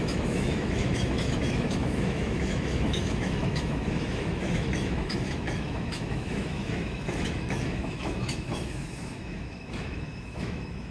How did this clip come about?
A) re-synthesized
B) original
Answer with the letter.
A